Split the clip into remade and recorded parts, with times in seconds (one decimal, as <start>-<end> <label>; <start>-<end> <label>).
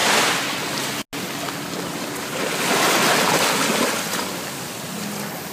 0.0-5.5 recorded